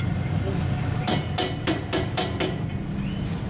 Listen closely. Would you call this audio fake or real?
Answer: real